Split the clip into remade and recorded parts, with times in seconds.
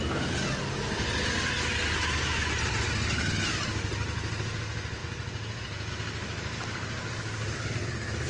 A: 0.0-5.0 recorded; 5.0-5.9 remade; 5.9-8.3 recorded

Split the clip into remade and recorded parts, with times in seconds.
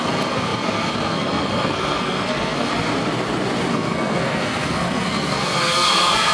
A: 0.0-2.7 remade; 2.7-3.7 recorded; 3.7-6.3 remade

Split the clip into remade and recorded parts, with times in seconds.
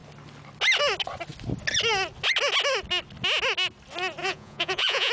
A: 0.0-4.2 recorded; 4.2-5.1 remade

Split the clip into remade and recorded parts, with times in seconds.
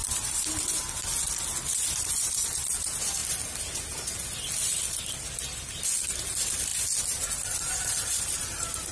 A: 0.0-8.9 recorded